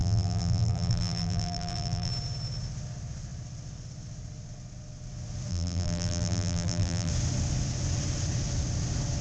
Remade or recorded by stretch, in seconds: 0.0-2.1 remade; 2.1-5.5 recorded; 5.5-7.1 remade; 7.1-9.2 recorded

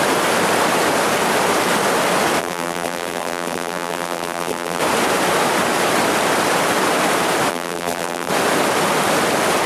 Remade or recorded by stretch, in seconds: 0.0-2.4 recorded; 2.4-4.8 remade; 4.8-7.5 recorded; 7.5-8.3 remade; 8.3-9.7 recorded

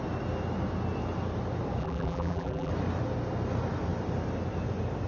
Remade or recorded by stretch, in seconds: 0.0-1.8 recorded; 1.8-2.7 remade; 2.7-5.1 recorded